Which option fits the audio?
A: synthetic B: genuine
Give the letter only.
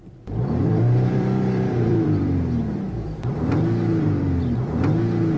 A